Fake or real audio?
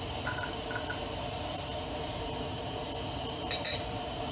fake